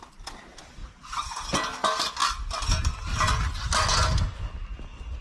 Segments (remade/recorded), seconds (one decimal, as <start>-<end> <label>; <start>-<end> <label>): 0.0-5.2 recorded